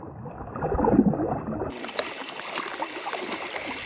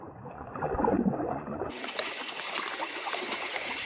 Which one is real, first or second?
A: first